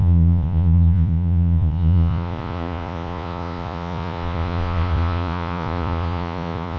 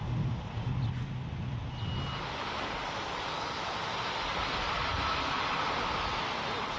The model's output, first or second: first